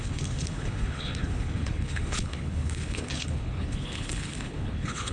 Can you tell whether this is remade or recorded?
remade